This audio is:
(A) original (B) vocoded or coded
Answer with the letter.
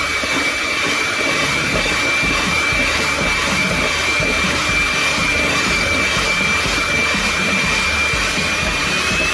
B